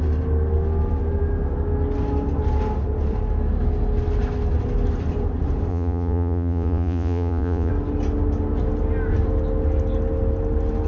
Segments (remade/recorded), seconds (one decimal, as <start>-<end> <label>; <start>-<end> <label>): 0.0-5.7 recorded; 5.7-7.7 remade; 7.7-10.9 recorded